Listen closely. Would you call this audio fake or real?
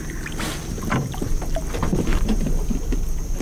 fake